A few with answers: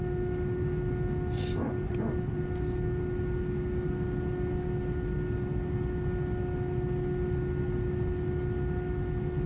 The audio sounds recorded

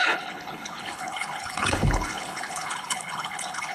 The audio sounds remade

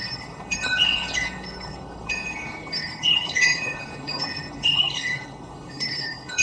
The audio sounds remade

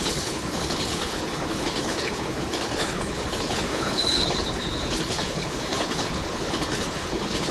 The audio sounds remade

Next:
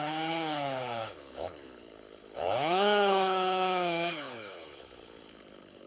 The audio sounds remade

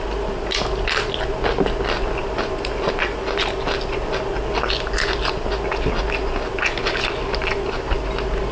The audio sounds recorded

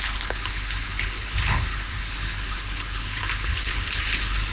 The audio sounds remade